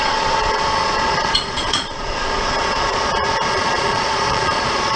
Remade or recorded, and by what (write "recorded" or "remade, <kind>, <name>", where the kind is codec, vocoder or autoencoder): remade, vocoder, Vocos